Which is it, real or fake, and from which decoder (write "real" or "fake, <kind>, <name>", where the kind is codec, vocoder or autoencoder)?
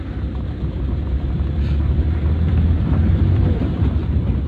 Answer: fake, vocoder, BigVGAN v2